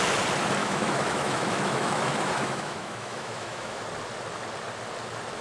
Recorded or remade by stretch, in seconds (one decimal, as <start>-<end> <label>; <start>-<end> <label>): 0.0-0.6 recorded; 0.6-3.8 remade; 3.8-5.4 recorded